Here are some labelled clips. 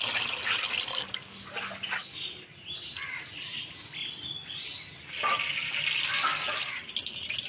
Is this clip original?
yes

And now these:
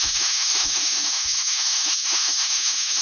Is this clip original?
no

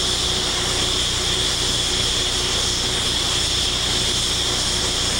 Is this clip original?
yes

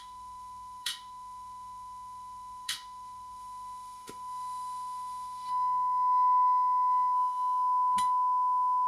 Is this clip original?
no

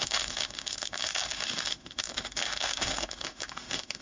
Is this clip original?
no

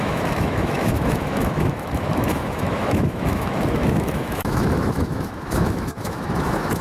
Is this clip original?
no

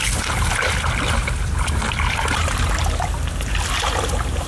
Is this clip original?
yes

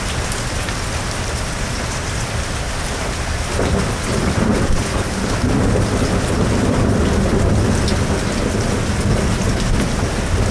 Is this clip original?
yes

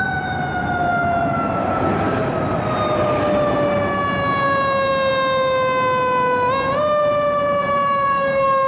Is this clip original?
yes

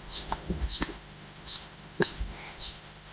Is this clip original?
no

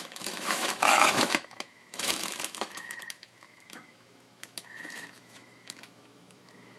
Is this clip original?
no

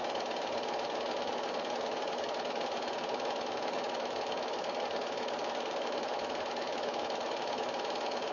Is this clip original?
no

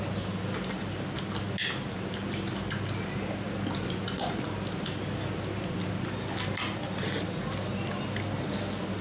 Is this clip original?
yes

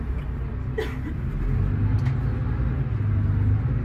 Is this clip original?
yes